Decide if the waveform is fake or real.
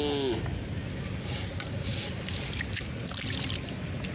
real